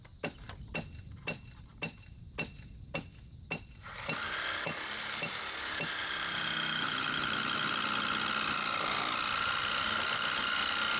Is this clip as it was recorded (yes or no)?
yes